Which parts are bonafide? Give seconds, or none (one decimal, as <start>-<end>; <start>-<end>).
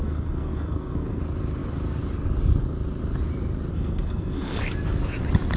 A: 1.2-3.7; 4.6-5.6